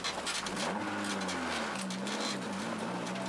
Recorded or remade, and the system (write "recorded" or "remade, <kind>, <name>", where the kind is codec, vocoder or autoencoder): recorded